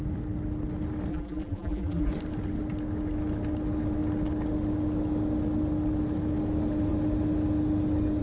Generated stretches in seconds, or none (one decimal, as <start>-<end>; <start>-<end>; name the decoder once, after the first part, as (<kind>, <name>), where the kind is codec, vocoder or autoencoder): 1.1-2.1 (vocoder, BigVGAN v2)